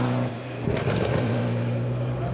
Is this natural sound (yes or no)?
yes